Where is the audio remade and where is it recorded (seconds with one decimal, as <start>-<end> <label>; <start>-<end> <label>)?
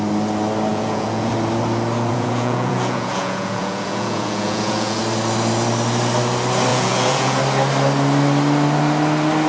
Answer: 0.0-0.7 recorded; 0.7-1.3 remade; 1.3-2.1 recorded; 2.1-5.0 remade; 5.0-6.7 recorded; 6.7-7.4 remade; 7.4-9.5 recorded